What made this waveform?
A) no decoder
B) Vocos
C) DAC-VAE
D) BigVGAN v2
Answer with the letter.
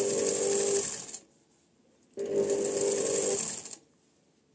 A